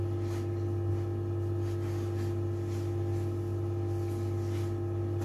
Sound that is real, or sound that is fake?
real